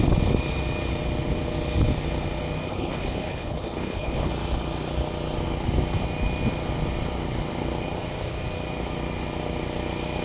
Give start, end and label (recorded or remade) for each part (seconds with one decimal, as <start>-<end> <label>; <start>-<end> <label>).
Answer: 0.0-2.7 recorded; 2.7-4.3 remade; 4.3-10.2 recorded